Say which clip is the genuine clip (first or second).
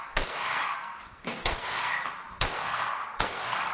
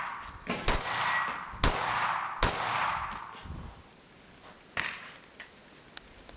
second